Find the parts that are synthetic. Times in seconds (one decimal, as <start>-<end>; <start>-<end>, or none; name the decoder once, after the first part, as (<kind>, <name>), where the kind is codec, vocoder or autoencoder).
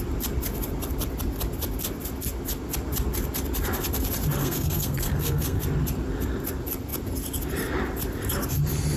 4.4-5.6 (codec, SNAC)